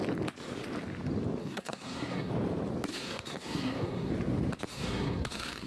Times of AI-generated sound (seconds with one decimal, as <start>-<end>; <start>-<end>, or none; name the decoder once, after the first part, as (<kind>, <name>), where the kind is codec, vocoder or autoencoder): 1.4-2.3 (codec, SNAC); 2.9-4.1; 4.7-5.7